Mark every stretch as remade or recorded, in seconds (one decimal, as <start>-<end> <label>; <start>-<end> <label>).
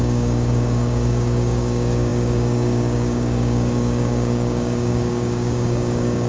0.0-6.3 remade